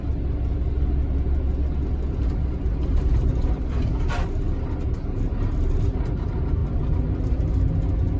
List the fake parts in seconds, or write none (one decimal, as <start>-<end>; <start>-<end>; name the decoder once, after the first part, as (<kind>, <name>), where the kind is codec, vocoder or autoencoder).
none